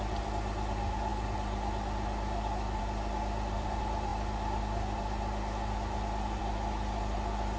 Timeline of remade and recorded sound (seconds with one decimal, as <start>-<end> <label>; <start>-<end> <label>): 0.0-7.6 recorded